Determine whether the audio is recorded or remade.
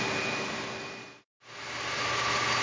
recorded